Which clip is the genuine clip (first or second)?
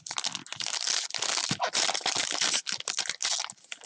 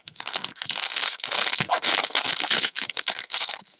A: first